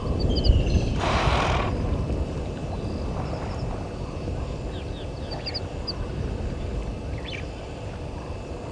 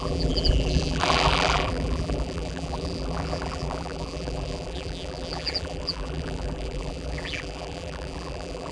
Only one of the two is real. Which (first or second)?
first